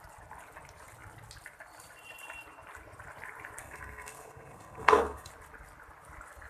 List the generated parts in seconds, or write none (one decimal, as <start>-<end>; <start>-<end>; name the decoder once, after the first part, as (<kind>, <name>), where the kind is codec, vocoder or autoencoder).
3.6-5.3 (codec, SNAC)